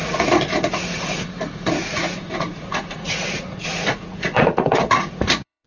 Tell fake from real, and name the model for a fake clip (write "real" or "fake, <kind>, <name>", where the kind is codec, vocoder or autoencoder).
fake, vocoder, Vocos